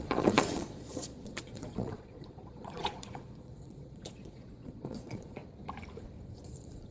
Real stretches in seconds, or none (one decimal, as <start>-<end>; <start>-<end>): 5.4-6.2